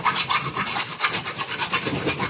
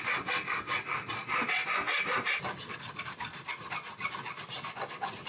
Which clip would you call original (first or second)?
second